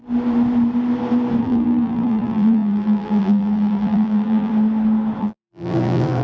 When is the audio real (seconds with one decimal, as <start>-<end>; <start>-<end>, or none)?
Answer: 0.0-1.4; 4.5-5.2